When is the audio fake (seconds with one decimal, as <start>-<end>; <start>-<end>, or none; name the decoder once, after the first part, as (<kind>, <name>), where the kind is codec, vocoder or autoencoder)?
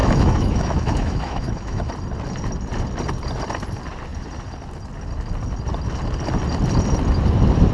0.0-1.9 (autoencoder, DAC-VAE)